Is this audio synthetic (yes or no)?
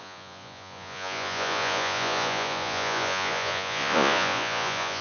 yes